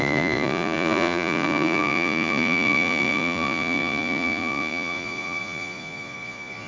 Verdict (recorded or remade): remade